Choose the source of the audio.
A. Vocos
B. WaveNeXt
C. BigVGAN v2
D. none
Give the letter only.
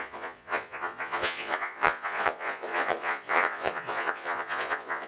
A